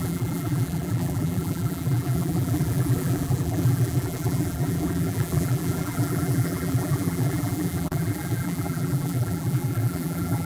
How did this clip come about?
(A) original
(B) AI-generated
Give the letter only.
B